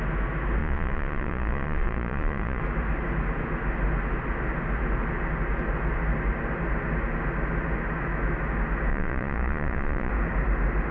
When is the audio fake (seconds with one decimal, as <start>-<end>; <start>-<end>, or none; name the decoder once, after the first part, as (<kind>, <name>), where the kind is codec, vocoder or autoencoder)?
0.6-2.6 (vocoder, Vocos); 8.9-10.1

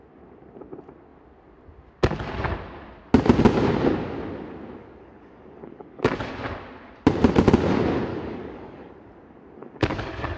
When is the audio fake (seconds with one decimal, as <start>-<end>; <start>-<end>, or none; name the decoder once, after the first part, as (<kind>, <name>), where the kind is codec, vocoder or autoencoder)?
4.8-6.1 (codec, DAC); 8.1-8.9; 9.6-10.4

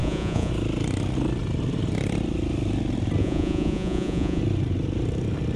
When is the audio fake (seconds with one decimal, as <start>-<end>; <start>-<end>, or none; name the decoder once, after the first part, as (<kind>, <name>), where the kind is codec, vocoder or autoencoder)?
0.0-0.5 (vocoder, Vocos); 3.2-4.4

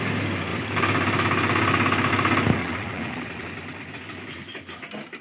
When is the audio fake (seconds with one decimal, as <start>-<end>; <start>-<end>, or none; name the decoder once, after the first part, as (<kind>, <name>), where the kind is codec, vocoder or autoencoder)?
2.6-3.5 (vocoder, WaveNeXt)

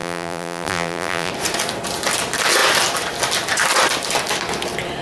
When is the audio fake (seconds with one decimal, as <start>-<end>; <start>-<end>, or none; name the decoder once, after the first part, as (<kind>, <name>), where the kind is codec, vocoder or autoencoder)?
0.0-1.3 (vocoder, BigVGAN v2)